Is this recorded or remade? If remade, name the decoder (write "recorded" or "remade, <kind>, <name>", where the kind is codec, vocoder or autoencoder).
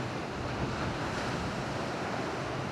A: recorded